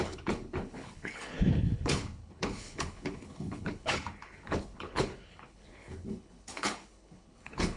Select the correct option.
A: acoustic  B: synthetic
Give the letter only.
B